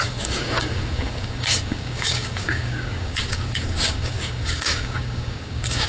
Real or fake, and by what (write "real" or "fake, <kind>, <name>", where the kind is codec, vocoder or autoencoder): fake, codec, DAC